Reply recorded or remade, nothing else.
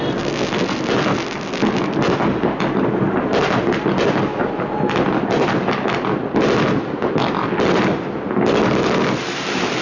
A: recorded